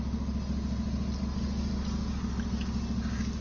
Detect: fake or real real